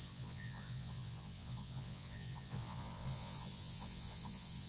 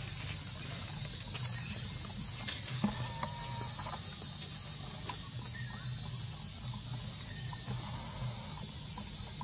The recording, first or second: second